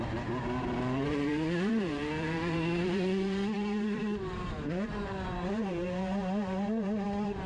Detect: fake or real fake